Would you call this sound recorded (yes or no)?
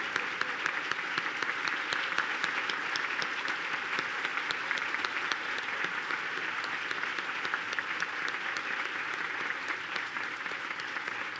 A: yes